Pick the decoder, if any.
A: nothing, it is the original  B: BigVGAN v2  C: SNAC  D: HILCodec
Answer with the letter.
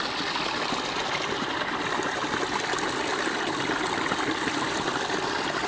A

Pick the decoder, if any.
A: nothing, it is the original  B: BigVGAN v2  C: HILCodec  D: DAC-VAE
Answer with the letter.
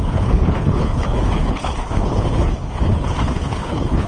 C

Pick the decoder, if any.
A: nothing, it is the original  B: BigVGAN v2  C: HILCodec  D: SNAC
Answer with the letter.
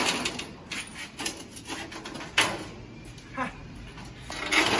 A